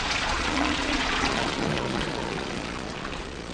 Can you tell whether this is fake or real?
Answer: fake